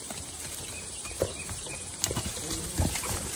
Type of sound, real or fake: fake